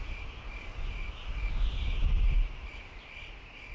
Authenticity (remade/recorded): recorded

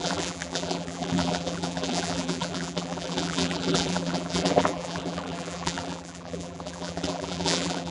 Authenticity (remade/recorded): remade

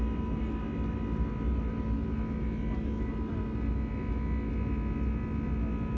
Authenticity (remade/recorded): recorded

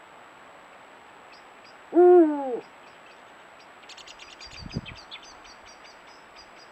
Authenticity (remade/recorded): recorded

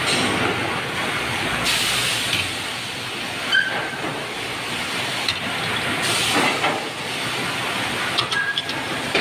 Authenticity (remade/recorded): recorded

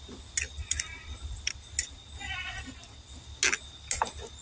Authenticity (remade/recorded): recorded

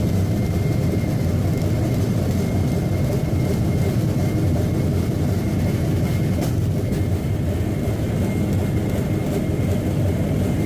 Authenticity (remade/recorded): recorded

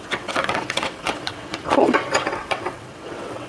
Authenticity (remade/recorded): remade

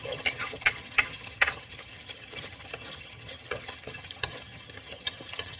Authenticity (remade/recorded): remade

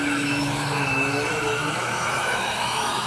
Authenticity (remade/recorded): remade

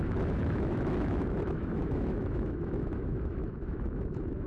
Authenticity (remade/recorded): remade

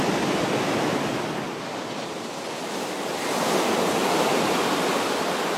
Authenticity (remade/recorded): recorded